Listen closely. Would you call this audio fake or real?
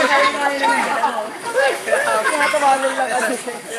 fake